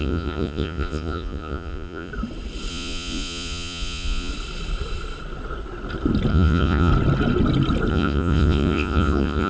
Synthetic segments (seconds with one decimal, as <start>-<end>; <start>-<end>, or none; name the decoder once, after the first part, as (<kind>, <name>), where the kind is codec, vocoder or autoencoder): 0.0-2.1 (vocoder, Vocos); 2.7-4.3; 6.3-6.9; 7.9-9.5